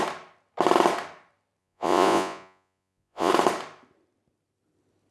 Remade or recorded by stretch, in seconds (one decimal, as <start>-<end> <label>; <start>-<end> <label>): 0.0-1.6 recorded; 1.6-3.3 remade; 3.3-5.1 recorded